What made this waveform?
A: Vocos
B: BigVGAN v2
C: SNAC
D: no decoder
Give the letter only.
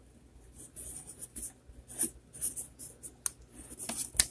D